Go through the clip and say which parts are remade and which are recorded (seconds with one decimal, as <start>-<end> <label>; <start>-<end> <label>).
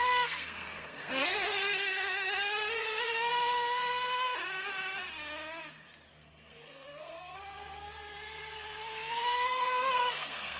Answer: 0.0-3.8 remade; 3.8-6.1 recorded; 6.1-10.6 remade